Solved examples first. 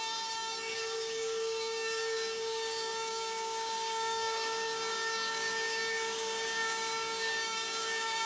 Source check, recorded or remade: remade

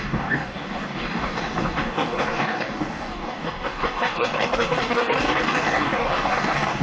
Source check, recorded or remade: remade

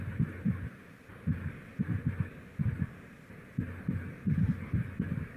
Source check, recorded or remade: recorded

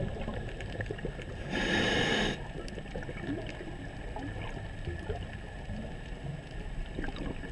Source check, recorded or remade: recorded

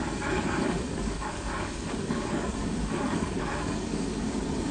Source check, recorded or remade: remade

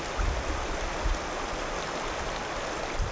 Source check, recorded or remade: recorded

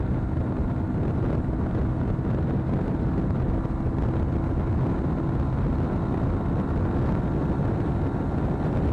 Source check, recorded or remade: recorded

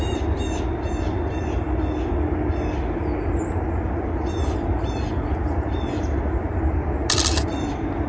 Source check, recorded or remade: recorded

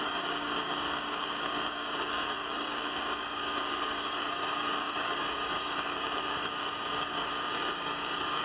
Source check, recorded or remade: remade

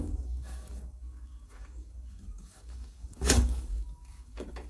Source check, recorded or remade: remade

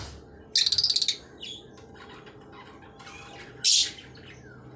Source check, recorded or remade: recorded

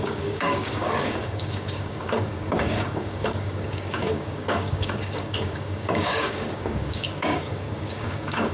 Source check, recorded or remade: remade